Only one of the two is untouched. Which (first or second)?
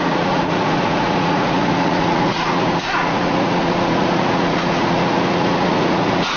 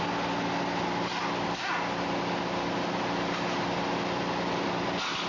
second